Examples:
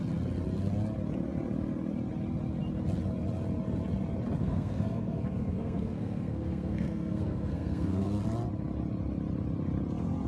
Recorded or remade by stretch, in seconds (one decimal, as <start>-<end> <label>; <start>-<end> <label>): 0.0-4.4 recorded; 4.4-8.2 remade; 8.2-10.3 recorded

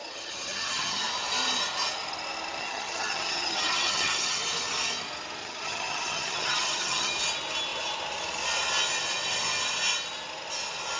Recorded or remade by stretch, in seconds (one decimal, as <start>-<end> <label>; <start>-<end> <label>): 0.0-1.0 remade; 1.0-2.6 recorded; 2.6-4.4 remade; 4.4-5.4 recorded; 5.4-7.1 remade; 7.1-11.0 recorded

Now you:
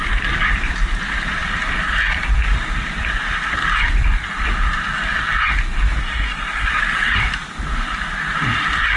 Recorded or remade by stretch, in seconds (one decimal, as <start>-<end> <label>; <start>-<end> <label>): 0.0-6.0 recorded; 6.0-6.8 remade; 6.8-9.0 recorded

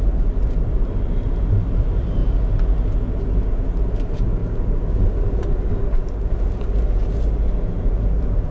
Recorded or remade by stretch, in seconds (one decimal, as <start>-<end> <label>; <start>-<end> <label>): 0.0-2.2 remade; 2.2-4.0 recorded; 4.0-8.5 remade